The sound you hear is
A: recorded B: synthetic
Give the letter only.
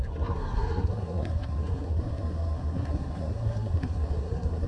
B